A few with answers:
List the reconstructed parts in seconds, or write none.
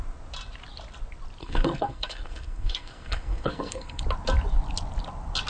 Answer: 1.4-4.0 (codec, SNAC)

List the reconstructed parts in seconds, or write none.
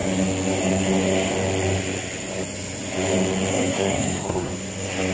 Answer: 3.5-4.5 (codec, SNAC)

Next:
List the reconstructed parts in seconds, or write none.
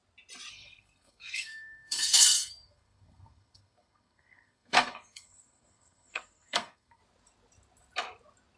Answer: 0.5-7.0 (codec, SNAC)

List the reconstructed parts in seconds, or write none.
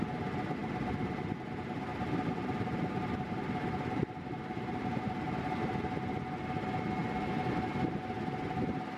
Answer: 1.9-5.7 (vocoder, BigVGAN v2)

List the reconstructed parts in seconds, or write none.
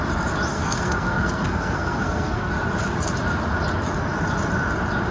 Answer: 0.5-2.5 (codec, SNAC)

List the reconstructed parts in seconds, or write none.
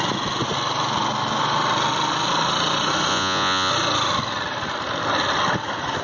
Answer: 3.1-3.7 (vocoder, Vocos)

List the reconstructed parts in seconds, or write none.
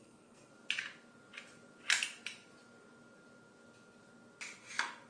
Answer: 0.0-0.5 (codec, SNAC)